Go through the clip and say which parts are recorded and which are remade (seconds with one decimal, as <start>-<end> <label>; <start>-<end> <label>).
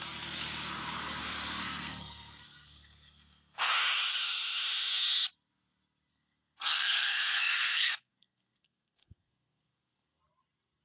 0.0-1.2 recorded; 1.2-3.7 remade; 3.7-6.1 recorded; 6.1-10.2 remade; 10.2-10.8 recorded